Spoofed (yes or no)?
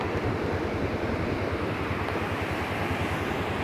no